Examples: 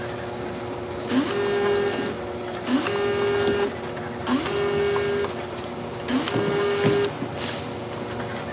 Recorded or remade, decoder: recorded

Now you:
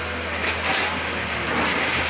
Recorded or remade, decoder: recorded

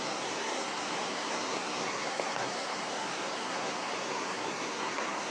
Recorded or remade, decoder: remade, codec, SNAC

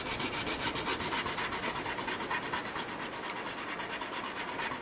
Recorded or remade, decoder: recorded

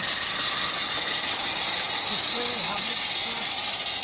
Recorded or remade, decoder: recorded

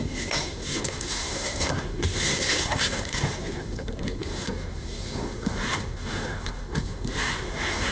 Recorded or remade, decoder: remade, codec, SNAC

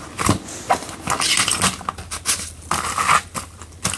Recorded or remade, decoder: recorded